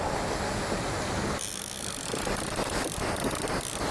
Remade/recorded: recorded